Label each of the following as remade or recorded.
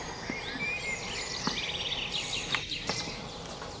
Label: recorded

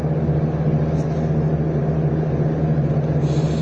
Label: recorded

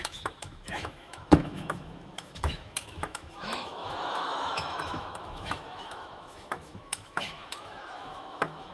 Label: remade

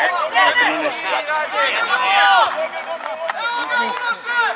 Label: recorded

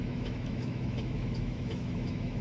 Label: remade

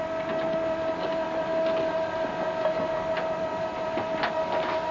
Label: recorded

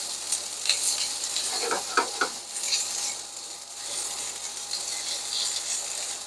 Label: recorded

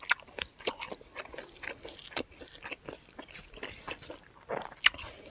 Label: recorded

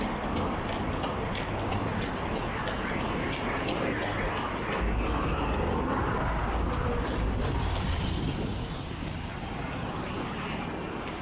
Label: recorded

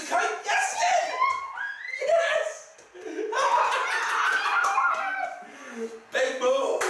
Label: recorded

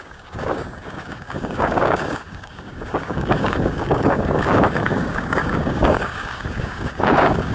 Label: remade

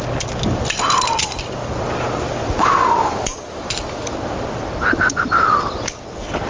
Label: recorded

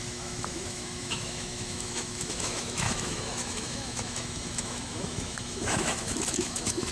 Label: remade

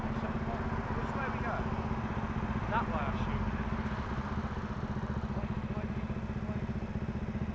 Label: recorded